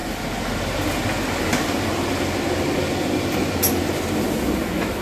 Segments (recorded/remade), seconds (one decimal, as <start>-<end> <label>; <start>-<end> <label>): 0.0-5.0 recorded